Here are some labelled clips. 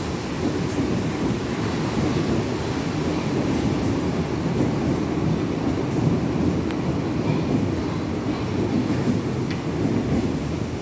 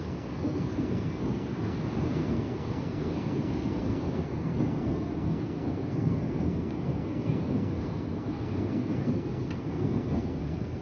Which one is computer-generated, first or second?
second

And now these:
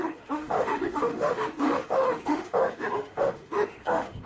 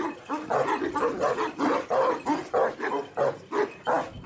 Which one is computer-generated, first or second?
first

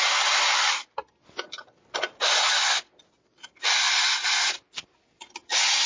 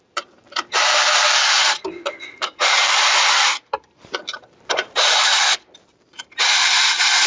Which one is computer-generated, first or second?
second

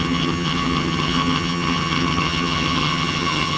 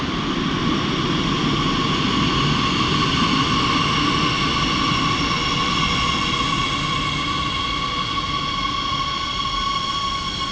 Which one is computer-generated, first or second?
first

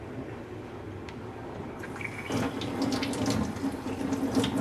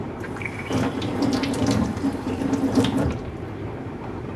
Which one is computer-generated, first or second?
second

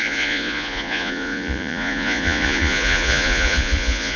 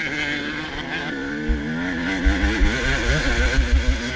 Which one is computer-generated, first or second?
first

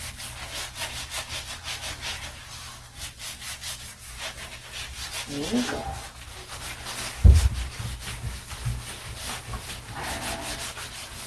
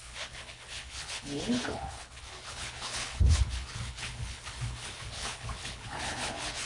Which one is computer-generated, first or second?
second